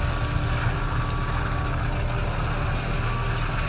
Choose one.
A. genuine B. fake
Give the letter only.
A